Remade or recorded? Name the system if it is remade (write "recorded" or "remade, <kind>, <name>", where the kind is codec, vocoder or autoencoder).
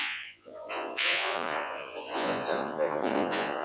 remade, vocoder, Vocos